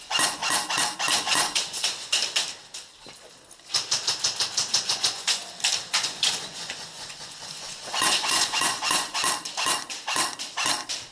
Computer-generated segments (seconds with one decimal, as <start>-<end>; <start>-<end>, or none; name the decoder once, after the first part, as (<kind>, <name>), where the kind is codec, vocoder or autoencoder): 0.0-0.4 (vocoder, Vocos); 1.2-2.2; 4.7-5.4; 5.9-9.2